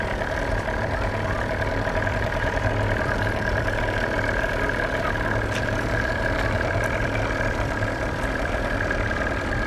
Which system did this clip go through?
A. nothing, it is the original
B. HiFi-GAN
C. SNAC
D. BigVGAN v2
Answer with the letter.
D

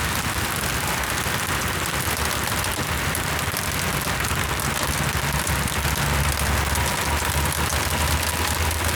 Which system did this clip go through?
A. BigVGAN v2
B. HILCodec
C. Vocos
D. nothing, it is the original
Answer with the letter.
D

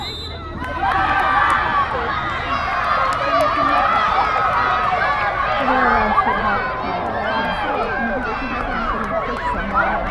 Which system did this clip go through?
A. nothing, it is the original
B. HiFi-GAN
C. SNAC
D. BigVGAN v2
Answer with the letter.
A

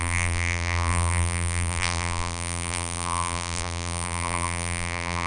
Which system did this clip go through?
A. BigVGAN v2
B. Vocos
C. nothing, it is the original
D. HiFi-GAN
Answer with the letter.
A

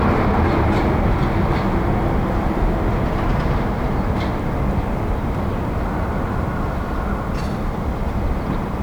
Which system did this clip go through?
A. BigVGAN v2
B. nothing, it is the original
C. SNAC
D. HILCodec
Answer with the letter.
B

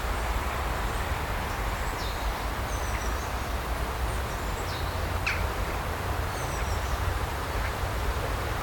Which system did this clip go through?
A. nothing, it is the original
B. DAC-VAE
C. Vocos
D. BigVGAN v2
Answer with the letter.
D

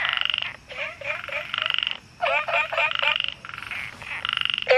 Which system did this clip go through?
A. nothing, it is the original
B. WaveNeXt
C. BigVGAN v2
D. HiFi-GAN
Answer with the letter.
A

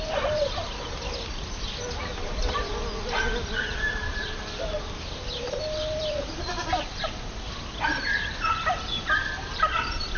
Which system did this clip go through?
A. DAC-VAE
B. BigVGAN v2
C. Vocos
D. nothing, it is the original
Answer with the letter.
B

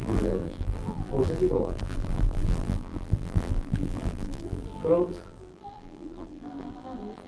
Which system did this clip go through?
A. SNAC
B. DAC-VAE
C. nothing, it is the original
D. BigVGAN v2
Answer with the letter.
D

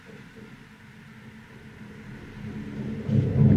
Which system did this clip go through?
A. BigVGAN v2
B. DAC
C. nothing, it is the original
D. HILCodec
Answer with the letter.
C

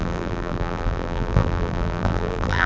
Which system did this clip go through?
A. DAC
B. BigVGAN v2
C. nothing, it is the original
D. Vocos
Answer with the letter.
B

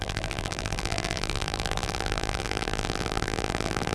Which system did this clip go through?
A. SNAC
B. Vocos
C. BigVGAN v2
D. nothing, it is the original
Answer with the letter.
C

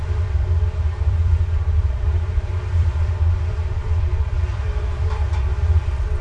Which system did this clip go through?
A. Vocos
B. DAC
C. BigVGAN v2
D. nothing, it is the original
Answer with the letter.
C